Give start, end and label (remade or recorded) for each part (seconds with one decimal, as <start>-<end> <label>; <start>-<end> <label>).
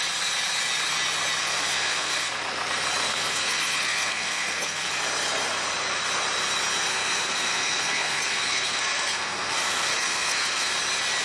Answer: 0.0-1.4 recorded; 1.4-2.3 remade; 2.3-3.1 recorded; 3.1-4.9 remade; 4.9-6.9 recorded; 6.9-10.7 remade; 10.7-11.2 recorded